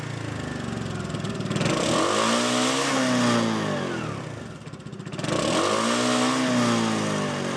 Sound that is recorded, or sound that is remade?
recorded